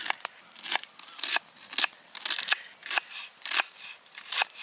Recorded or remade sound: recorded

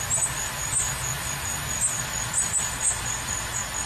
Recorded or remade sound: recorded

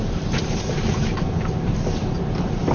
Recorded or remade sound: remade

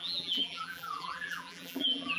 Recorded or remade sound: remade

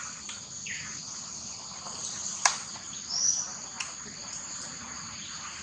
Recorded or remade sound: recorded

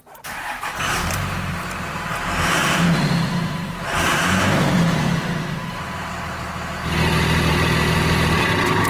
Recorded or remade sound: remade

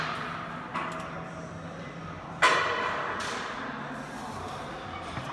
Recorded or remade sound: recorded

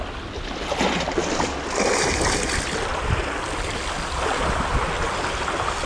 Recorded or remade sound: recorded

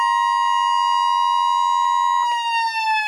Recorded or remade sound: recorded